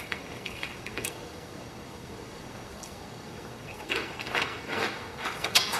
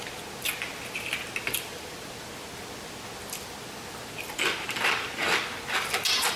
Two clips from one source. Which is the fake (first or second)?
first